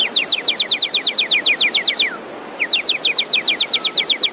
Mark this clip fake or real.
real